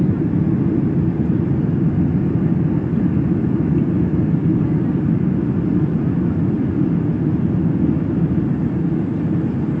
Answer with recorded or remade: recorded